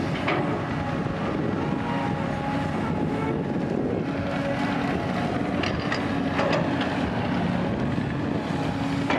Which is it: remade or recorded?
recorded